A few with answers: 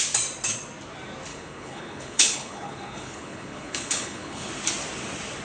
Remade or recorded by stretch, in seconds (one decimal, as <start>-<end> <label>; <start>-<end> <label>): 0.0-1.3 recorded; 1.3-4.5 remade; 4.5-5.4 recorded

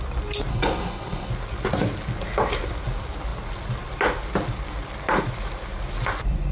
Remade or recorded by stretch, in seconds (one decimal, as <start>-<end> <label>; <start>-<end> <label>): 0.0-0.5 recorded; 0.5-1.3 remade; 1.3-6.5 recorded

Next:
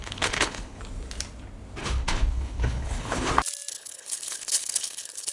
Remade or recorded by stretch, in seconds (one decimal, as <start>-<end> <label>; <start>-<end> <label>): 0.0-0.8 remade; 0.8-1.8 recorded; 1.8-3.3 remade; 3.3-3.7 recorded; 3.7-5.3 remade

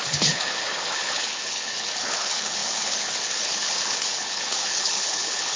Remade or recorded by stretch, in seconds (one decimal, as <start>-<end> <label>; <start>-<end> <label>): 0.0-5.6 remade

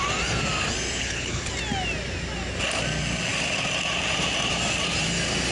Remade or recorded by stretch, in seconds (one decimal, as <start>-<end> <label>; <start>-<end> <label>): 0.0-1.0 recorded; 1.0-1.5 remade; 1.5-5.5 recorded

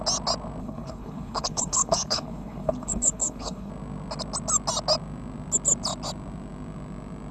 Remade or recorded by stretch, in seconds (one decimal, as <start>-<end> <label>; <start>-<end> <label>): 0.0-0.6 recorded; 0.6-3.7 remade; 3.7-7.3 recorded

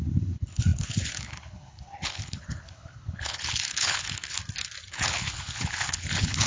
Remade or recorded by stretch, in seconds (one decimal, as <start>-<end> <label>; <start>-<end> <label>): 0.0-4.4 remade; 4.4-4.9 recorded; 4.9-6.5 remade